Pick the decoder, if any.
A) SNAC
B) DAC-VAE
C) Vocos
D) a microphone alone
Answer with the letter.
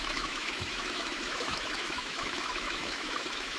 B